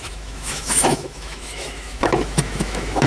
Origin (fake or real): fake